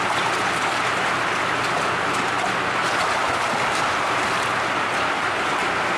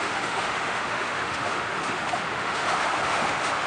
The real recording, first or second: first